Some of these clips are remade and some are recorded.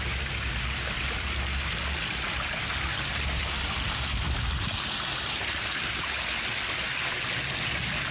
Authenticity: recorded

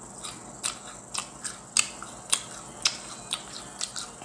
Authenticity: recorded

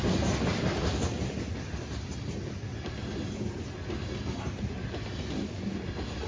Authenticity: recorded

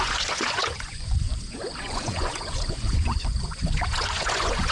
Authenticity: remade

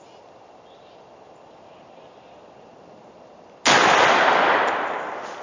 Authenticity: recorded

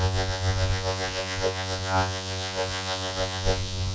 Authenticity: remade